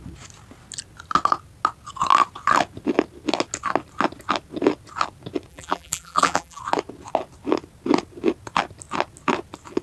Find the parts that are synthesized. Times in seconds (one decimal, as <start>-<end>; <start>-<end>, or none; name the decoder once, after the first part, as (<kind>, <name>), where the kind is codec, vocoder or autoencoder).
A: 5.5-6.6 (vocoder, BigVGAN v2)